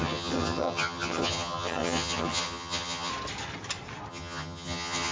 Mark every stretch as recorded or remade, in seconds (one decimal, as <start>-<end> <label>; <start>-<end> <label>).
0.0-3.1 remade; 3.1-4.1 recorded; 4.1-5.1 remade